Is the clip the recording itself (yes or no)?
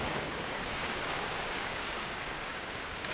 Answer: no